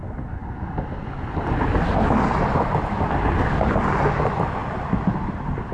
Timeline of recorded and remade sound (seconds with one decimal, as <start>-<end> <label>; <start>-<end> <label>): 0.0-5.7 recorded